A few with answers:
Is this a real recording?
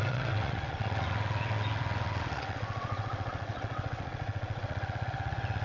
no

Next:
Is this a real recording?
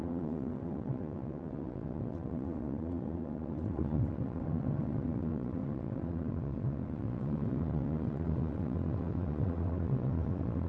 no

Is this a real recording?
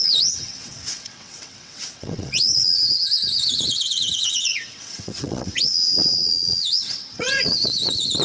no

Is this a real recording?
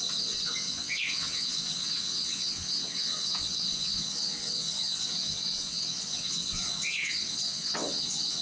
no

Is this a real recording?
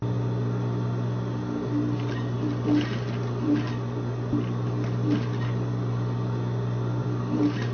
yes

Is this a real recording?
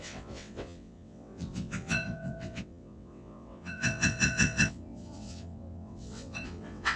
no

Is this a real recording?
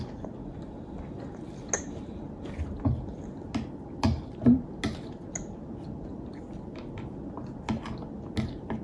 yes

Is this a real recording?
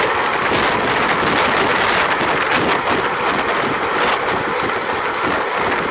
yes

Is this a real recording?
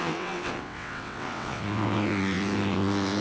no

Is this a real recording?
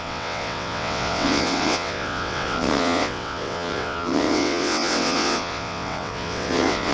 no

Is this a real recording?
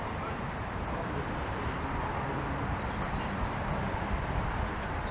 yes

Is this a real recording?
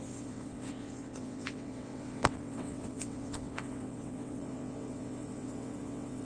no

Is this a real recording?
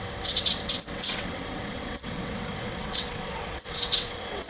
no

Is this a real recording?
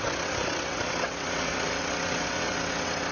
no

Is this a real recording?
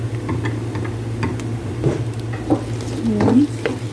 yes